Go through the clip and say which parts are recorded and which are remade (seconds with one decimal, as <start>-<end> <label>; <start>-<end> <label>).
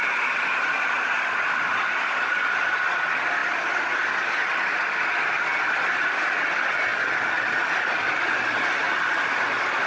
0.0-9.9 recorded